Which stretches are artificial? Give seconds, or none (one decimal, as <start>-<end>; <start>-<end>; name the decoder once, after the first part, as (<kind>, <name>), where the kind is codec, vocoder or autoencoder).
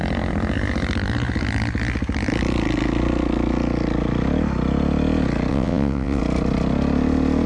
5.5-6.2 (vocoder, WaveNeXt)